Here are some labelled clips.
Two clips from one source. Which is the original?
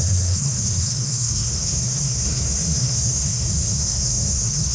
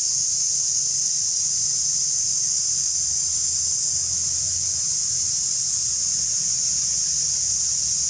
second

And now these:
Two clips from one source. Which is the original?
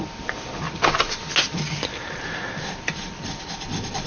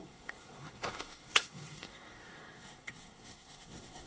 first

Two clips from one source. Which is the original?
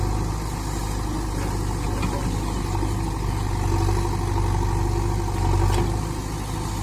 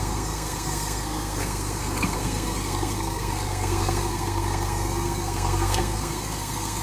first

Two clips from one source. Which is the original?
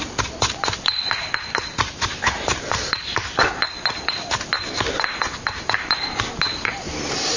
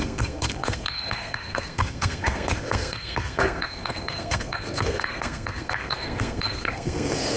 first